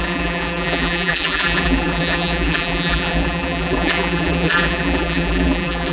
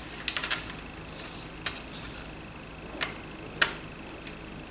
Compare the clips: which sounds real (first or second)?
second